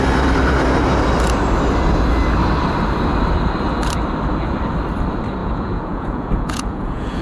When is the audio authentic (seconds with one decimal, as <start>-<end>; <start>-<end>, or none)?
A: 0.0-5.4